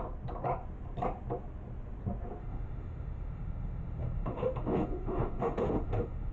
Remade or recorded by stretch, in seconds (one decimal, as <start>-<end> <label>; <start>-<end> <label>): 0.0-2.4 recorded; 2.4-6.3 remade